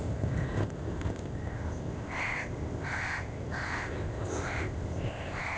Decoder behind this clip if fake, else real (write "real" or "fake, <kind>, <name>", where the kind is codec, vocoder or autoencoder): fake, codec, ZipCodec